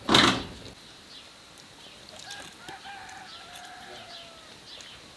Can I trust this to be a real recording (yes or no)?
yes